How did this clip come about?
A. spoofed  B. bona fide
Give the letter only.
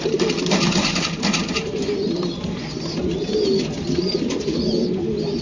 B